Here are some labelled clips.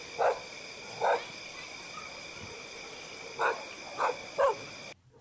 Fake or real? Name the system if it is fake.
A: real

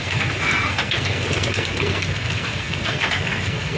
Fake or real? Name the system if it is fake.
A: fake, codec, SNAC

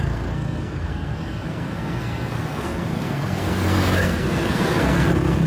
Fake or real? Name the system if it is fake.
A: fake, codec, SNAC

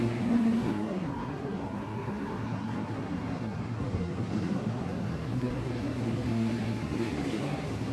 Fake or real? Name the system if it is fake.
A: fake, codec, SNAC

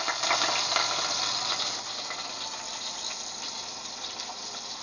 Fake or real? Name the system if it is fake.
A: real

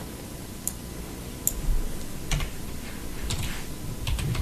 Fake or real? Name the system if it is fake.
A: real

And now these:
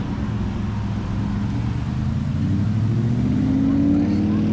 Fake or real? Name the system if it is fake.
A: real